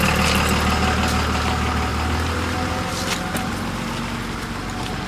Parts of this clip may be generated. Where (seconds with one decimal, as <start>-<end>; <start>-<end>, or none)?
none